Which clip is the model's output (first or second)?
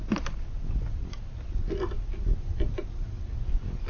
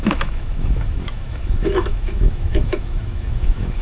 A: second